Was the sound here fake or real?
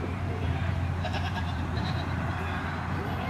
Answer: fake